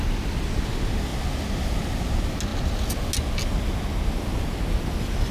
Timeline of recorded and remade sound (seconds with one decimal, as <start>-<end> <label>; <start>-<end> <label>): 0.0-5.3 recorded